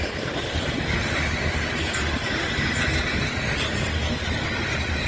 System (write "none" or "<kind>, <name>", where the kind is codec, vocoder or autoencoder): none